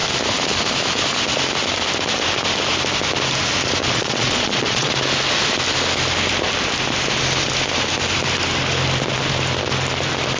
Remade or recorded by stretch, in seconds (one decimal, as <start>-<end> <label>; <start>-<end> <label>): 0.0-3.8 recorded; 3.8-4.9 remade; 4.9-10.4 recorded